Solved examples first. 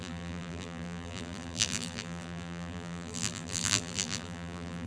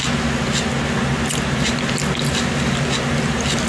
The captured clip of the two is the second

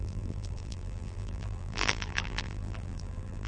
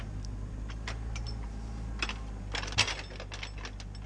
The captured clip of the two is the second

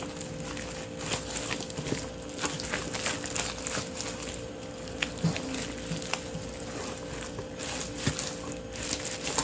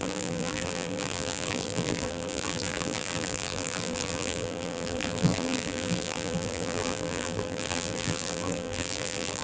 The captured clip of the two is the first